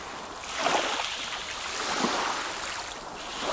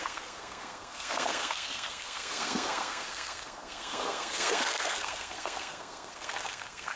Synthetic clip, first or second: second